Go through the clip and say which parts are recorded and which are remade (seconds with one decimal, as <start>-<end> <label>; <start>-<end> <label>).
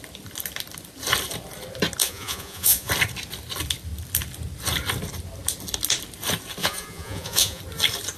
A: 0.0-2.0 recorded; 2.0-2.9 remade; 2.9-6.6 recorded; 6.6-7.6 remade; 7.6-8.2 recorded